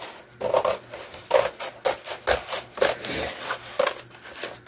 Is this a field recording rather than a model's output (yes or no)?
yes